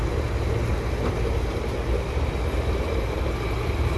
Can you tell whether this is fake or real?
real